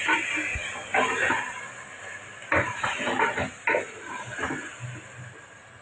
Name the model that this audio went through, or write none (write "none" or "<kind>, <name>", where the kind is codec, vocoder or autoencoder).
none